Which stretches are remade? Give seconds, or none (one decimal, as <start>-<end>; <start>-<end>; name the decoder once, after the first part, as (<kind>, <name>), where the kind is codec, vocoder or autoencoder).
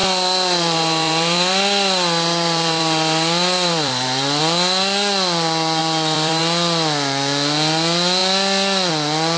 0.0-4.4 (vocoder, BigVGAN v2); 5.8-6.4